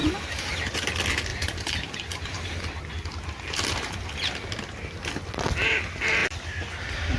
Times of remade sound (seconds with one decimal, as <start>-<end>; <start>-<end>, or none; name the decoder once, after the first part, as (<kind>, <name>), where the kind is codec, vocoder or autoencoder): 0.0-0.9 (vocoder, BigVGAN v2); 1.3-2.8